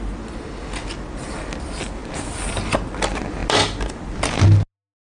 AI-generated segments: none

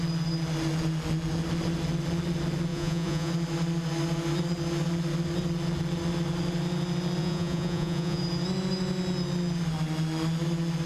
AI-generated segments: 2.7-3.3 (vocoder, Vocos); 7.2-8.2

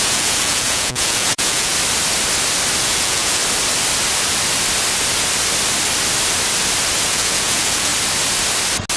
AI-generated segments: 0.0-1.7 (vocoder, Vocos); 2.8-3.4; 7.1-7.9

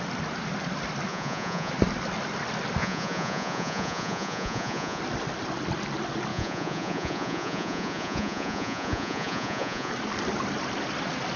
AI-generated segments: 1.1-1.7 (vocoder, Vocos); 2.8-5.0; 6.3-9.9

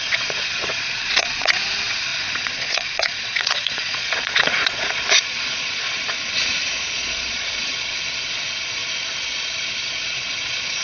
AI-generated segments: 0.0-8.8 (vocoder, Vocos); 10.0-10.8

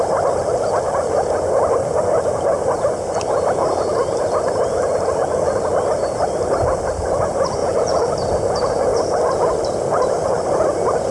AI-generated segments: 7.6-8.1 (vocoder, Vocos)